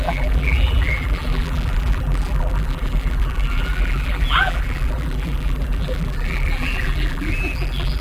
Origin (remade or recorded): remade